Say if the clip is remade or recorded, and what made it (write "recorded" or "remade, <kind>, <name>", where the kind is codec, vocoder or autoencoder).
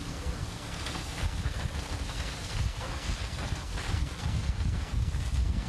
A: remade, codec, SNAC